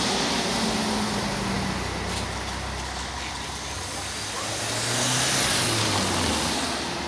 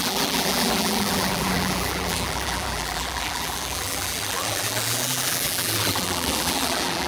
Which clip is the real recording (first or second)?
first